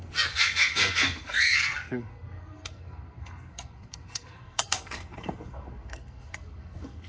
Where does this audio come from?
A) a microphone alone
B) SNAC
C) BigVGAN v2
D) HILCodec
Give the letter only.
B